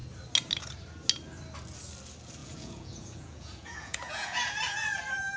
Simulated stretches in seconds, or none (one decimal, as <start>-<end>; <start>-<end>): 2.4-4.6